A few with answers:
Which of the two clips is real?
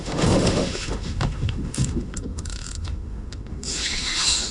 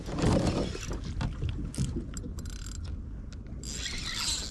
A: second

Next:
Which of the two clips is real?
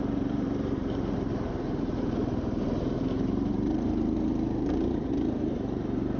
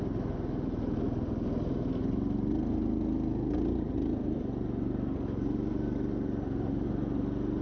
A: second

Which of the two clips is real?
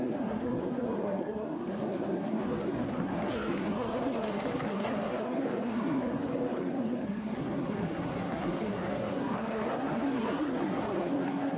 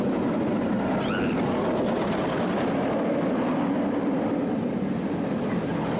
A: second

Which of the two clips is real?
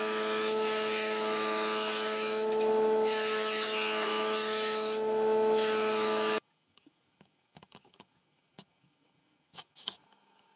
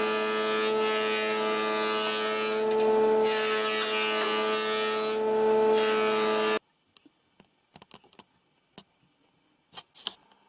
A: second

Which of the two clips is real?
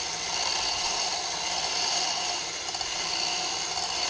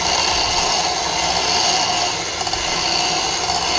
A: second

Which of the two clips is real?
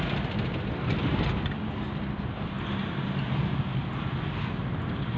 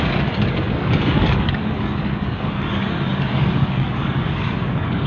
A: first